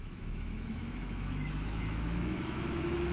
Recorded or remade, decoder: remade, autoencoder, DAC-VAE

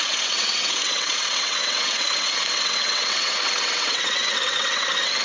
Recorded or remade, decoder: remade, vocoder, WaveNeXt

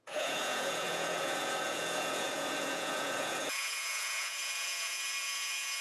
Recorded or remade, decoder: remade, vocoder, Vocos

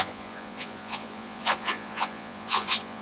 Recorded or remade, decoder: remade, vocoder, Vocos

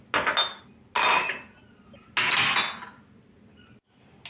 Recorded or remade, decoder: recorded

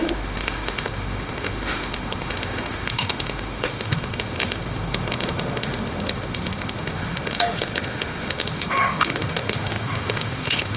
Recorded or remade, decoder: remade, autoencoder, DAC-VAE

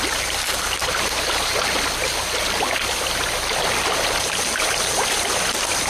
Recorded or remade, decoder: recorded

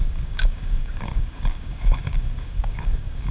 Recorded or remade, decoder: remade, codec, DAC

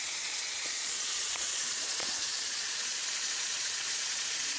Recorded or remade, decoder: remade, vocoder, Vocos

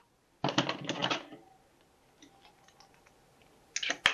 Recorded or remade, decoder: recorded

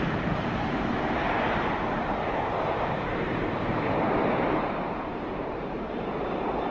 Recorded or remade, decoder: remade, vocoder, BigVGAN v2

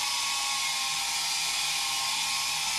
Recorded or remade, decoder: recorded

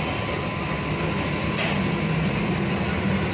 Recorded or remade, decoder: recorded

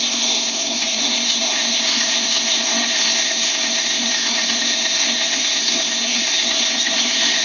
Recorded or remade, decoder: remade, codec, SNAC